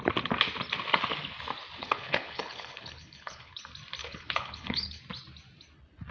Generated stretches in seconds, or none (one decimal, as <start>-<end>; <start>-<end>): 1.8-3.6; 4.0-5.0